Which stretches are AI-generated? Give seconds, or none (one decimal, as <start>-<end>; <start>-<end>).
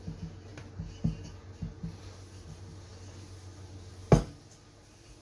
none